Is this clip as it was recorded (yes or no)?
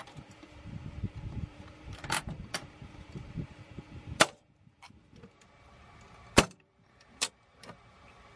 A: no